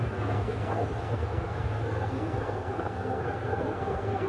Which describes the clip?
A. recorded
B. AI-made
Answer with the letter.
B